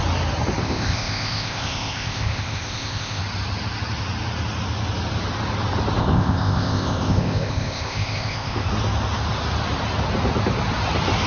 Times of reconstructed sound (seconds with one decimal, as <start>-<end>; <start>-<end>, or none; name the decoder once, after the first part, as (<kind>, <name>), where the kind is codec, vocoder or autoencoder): 0.6-3.2 (codec, ZipCodec); 6.0-8.7